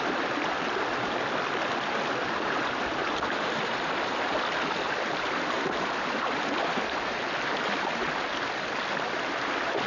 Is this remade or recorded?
recorded